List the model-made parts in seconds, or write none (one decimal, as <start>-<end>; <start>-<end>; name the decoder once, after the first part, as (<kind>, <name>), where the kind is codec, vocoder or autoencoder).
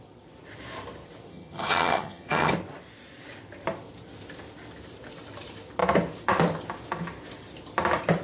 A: 1.3-2.5 (vocoder, HiFi-GAN)